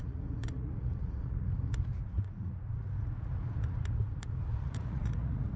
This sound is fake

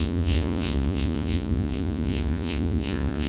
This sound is fake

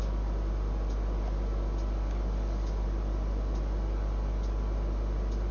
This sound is real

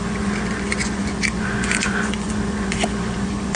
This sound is fake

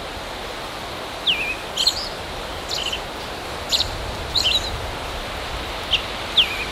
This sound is real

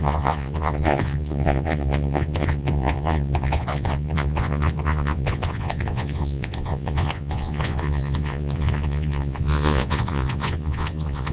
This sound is fake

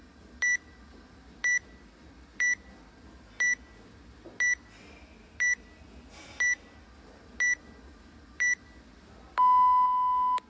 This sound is real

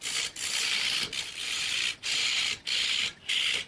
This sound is real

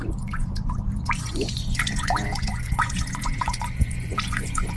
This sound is fake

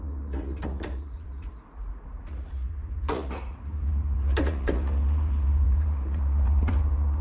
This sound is fake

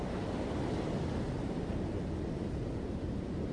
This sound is real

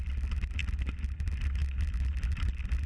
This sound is real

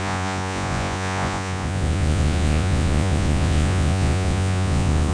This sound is fake